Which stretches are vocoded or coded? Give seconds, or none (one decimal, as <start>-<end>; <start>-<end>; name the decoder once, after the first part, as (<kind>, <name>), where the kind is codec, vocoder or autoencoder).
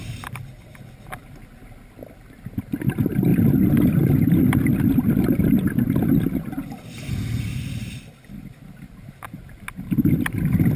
none